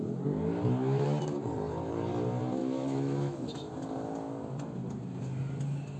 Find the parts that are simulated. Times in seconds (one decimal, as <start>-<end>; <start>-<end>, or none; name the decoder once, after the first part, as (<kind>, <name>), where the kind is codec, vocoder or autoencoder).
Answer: 2.6-3.7 (autoencoder, DAC-VAE)